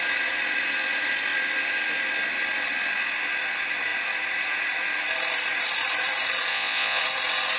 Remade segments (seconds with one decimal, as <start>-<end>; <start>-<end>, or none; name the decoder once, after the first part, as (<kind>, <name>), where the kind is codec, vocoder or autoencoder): 6.5-7.0 (vocoder, Vocos)